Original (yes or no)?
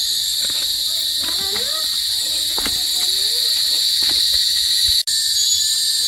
yes